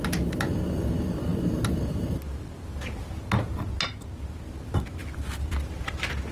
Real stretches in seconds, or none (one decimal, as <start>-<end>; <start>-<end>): 0.0-6.3